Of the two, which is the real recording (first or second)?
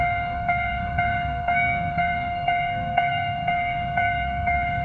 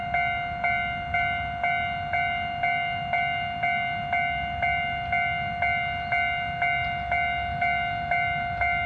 second